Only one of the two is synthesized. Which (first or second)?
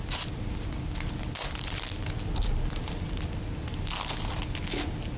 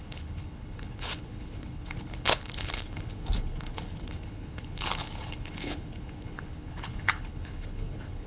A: second